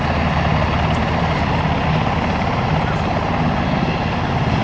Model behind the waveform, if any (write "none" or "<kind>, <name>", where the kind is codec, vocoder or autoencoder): none